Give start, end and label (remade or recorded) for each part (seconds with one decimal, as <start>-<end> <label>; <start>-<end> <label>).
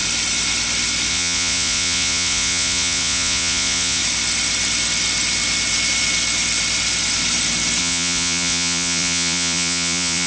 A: 0.0-1.1 recorded; 1.1-4.0 remade; 4.0-7.8 recorded; 7.8-10.3 remade